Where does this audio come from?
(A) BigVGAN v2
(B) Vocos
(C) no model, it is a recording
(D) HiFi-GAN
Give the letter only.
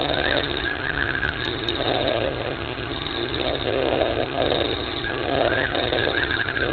D